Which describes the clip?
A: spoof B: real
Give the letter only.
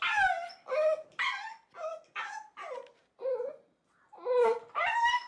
B